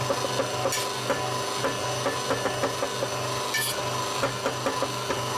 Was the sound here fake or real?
real